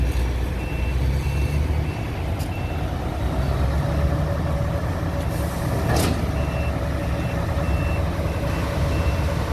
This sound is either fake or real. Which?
real